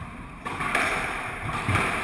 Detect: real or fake fake